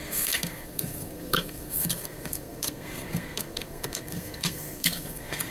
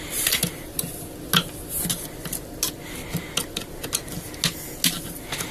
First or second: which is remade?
first